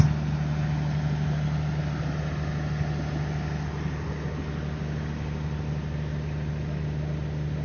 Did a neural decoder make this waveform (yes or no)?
no